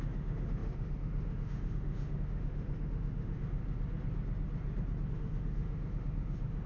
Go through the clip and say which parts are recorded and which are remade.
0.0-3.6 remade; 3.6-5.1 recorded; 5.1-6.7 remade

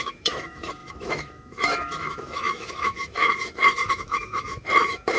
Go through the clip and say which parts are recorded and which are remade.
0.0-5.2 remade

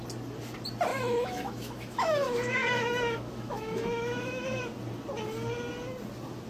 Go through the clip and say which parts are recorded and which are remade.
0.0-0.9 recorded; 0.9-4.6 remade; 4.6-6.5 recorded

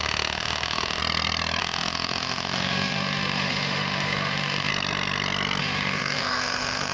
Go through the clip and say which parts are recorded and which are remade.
0.0-1.0 remade; 1.0-1.6 recorded; 1.6-4.7 remade; 4.7-5.6 recorded; 5.6-6.9 remade

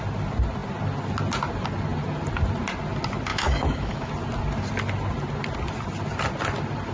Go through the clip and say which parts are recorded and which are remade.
0.0-3.3 recorded; 3.3-4.1 remade; 4.1-6.9 recorded

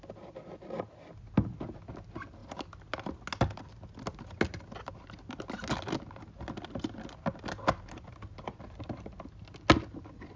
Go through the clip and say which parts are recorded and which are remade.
0.0-10.4 recorded

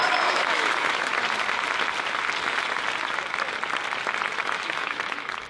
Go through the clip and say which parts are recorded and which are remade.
0.0-1.1 remade; 1.1-4.4 recorded; 4.4-5.5 remade